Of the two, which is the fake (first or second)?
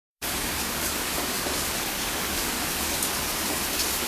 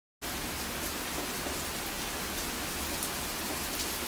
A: first